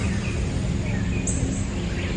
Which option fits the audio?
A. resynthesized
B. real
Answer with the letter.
B